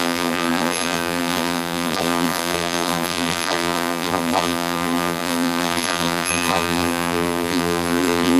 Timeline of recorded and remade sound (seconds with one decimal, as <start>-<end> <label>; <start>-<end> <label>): 0.0-8.4 remade